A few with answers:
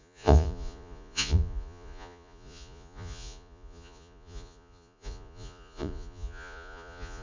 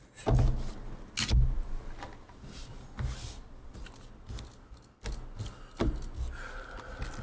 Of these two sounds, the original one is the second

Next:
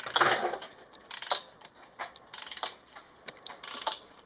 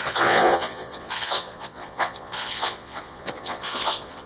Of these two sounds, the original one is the first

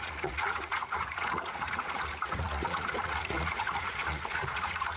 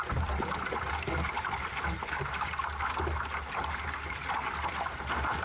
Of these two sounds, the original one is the second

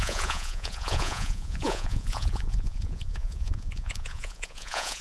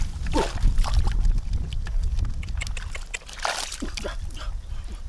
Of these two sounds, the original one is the second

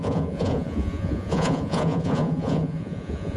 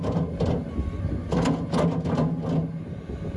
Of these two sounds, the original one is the second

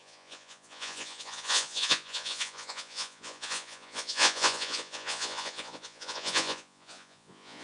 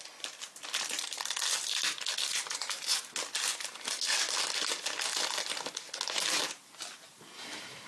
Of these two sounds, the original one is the second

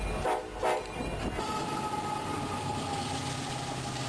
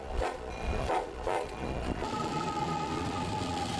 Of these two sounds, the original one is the first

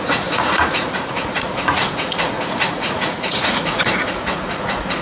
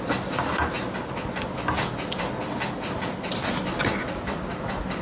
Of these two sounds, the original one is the second